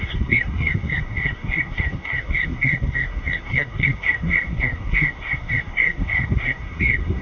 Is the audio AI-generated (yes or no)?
yes